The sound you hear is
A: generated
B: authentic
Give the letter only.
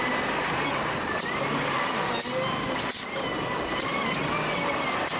B